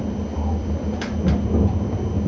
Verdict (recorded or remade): remade